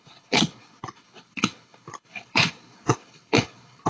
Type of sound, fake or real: fake